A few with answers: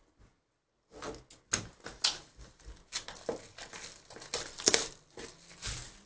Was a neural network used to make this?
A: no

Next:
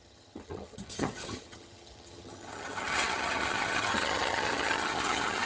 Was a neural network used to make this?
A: yes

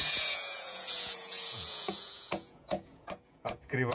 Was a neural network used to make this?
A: yes